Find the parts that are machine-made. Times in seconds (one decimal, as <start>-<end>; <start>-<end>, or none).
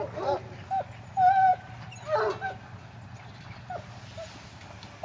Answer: none